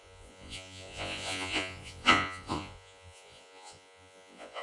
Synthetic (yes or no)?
yes